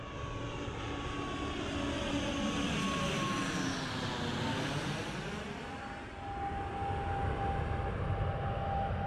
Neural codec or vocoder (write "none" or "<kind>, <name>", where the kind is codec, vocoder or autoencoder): none